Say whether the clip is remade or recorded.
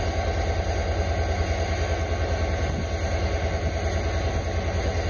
recorded